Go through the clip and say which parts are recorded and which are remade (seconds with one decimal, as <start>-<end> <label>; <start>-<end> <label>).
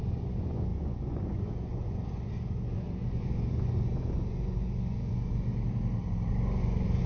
0.0-5.5 remade; 5.5-6.3 recorded; 6.3-7.1 remade